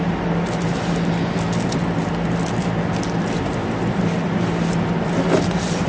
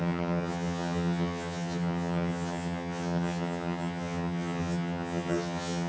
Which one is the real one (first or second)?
first